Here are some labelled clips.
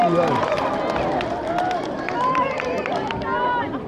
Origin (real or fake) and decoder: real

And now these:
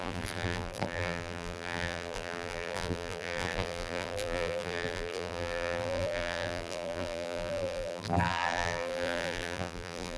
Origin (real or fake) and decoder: fake, vocoder, BigVGAN v2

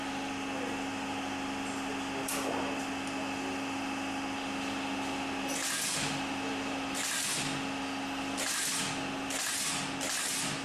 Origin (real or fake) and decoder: real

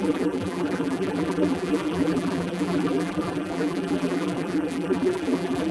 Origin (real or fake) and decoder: fake, vocoder, BigVGAN v2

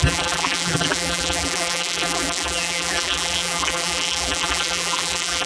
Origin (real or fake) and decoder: fake, vocoder, BigVGAN v2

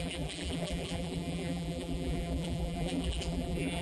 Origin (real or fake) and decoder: fake, vocoder, BigVGAN v2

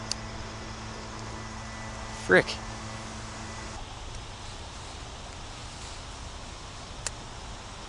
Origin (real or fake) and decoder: real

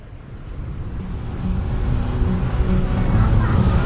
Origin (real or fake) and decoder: real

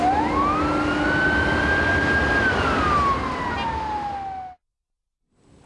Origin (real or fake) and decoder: real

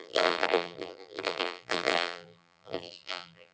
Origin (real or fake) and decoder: fake, vocoder, BigVGAN v2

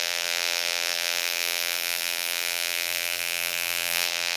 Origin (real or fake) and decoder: fake, vocoder, BigVGAN v2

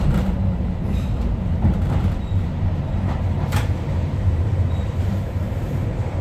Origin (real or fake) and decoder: fake, vocoder, BigVGAN v2